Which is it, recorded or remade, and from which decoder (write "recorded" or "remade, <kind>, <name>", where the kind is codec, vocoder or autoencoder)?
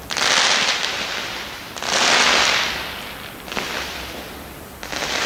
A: recorded